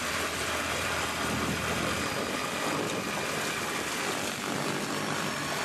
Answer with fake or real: real